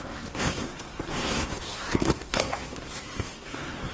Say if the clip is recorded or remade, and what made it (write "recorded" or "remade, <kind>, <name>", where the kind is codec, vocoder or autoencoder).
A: remade, codec, SNAC